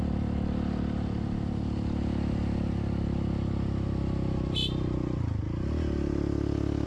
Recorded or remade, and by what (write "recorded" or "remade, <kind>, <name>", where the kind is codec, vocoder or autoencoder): recorded